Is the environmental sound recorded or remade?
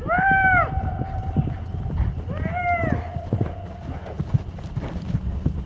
recorded